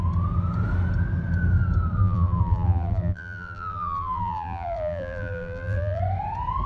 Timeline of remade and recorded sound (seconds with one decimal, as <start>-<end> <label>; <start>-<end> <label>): 0.0-2.0 recorded; 2.0-6.0 remade; 6.0-6.7 recorded